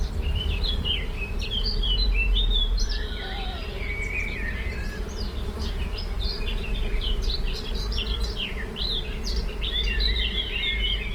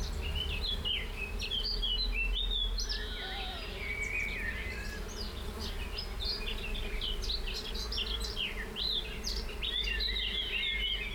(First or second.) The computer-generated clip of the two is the first